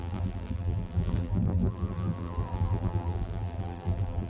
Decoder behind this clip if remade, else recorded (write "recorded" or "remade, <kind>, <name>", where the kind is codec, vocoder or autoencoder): remade, vocoder, BigVGAN v2